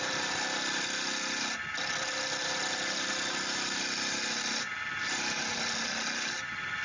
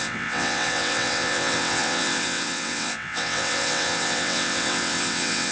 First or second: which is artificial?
second